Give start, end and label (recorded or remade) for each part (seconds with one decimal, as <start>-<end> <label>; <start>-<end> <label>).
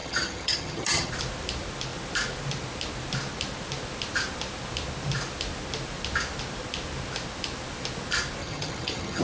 0.0-1.1 remade; 1.1-8.4 recorded; 8.4-9.2 remade